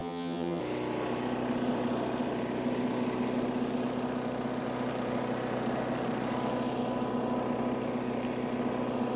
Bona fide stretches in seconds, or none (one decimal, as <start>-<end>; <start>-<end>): 0.6-9.2